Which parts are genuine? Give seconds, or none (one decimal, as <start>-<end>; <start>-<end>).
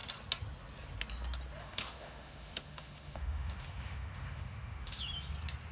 0.0-1.6; 5.0-5.7